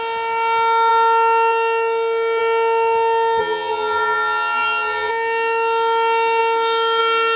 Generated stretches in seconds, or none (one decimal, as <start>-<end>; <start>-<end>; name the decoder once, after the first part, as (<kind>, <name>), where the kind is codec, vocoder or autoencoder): 3.4-5.1 (vocoder, HiFi-GAN)